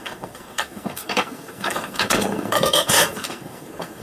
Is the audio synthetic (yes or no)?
yes